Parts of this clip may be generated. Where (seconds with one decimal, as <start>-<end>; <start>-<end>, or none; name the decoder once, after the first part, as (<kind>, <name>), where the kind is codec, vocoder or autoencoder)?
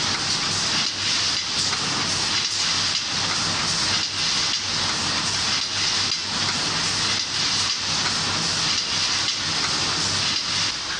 none